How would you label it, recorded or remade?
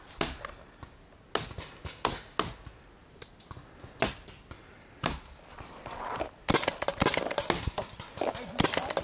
recorded